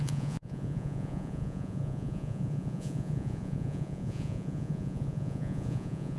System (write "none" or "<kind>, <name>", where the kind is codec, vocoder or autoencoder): vocoder, Vocos